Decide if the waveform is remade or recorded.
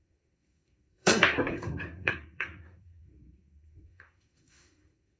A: remade